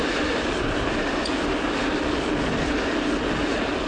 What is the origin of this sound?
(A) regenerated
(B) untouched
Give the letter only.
B